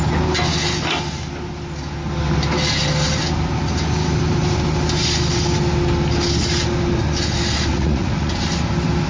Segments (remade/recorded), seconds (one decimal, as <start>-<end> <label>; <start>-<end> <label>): 0.0-7.7 recorded; 7.7-8.3 remade; 8.3-9.1 recorded